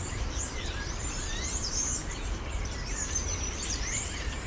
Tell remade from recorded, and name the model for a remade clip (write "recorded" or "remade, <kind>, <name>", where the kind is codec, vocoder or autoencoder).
remade, vocoder, BigVGAN v2